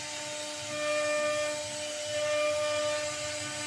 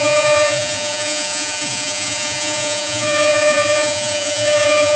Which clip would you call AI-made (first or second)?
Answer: second